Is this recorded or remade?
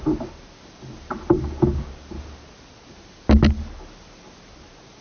recorded